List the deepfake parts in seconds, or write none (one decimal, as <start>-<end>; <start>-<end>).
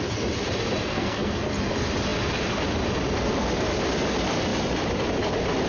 0.8-1.4